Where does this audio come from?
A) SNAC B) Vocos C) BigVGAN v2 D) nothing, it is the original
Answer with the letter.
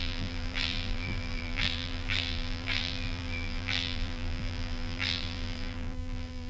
C